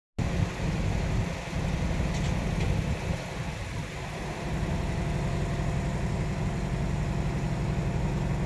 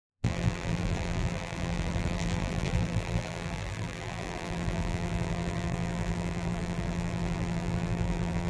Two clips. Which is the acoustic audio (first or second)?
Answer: first